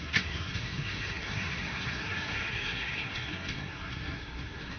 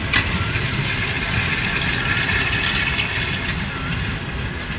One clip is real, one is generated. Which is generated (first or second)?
first